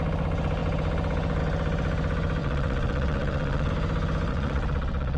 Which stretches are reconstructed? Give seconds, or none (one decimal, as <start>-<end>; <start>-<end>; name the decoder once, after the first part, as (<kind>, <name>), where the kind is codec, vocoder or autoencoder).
2.4-3.7 (vocoder, WaveNeXt); 4.3-5.2